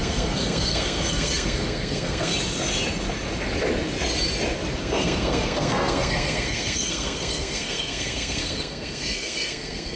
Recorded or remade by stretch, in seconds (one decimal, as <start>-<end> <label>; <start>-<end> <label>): 0.0-2.3 remade; 2.3-4.8 recorded; 4.8-10.0 remade